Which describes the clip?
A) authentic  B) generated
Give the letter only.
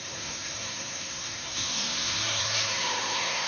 B